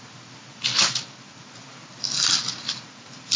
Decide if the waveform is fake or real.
real